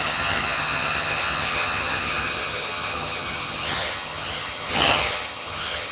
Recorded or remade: remade